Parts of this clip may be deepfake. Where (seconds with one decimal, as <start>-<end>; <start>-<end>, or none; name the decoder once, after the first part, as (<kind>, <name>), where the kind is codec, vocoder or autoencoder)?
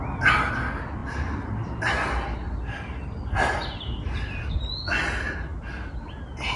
none